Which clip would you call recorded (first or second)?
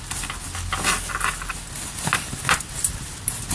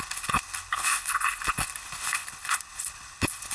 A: first